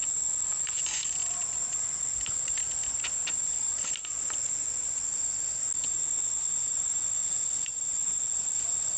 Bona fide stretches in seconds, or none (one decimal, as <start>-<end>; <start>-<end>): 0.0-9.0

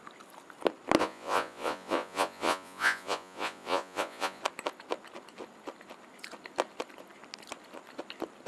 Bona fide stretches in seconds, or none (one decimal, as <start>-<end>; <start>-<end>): 0.0-1.0; 4.4-8.5

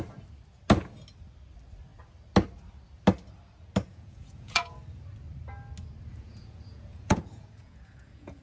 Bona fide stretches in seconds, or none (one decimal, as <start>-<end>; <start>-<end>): 0.0-3.9; 4.8-6.1

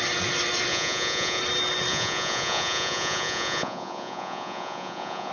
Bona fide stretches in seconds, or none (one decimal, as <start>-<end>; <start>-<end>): 0.0-0.7; 1.4-1.9

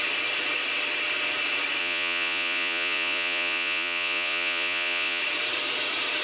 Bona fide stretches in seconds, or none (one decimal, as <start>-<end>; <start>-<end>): 0.0-1.8; 5.2-6.2

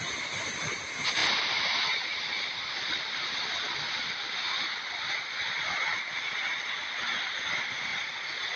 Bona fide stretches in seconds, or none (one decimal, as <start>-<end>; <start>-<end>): 0.0-7.9